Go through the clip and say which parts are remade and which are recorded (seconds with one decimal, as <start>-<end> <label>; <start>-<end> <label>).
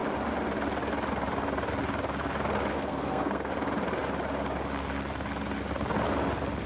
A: 0.0-2.7 recorded; 2.7-3.5 remade; 3.5-6.7 recorded